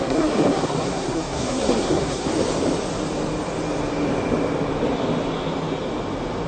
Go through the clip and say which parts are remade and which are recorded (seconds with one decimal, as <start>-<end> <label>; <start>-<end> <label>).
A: 0.0-2.3 remade; 2.3-6.5 recorded

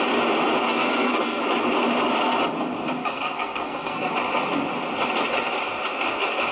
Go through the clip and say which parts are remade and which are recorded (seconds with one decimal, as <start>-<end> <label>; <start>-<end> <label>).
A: 0.0-0.7 recorded; 0.7-1.4 remade; 1.4-3.0 recorded; 3.0-4.1 remade; 4.1-6.5 recorded

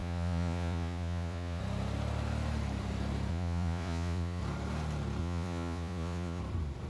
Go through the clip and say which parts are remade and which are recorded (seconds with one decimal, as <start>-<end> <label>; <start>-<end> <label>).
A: 0.0-1.6 remade; 1.6-3.3 recorded; 3.3-4.4 remade; 4.4-5.2 recorded; 5.2-6.4 remade; 6.4-6.9 recorded

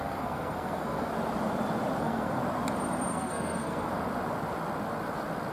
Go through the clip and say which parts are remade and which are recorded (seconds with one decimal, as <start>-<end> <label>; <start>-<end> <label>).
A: 0.0-1.1 remade; 1.1-2.0 recorded; 2.0-2.4 remade; 2.4-3.1 recorded; 3.1-3.9 remade; 3.9-5.5 recorded

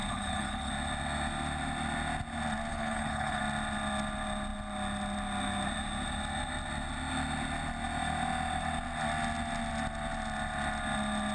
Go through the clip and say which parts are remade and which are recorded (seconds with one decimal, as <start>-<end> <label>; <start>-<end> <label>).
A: 0.0-0.7 remade; 0.7-2.7 recorded; 2.7-3.4 remade; 3.4-11.3 recorded